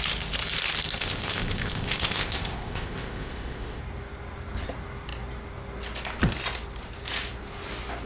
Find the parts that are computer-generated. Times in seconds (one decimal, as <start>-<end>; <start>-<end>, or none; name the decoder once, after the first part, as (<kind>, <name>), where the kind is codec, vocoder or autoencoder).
1.0-3.8 (codec, ZipCodec)